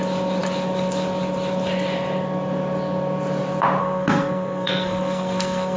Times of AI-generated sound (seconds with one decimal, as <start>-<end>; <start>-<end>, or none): 3.8-5.8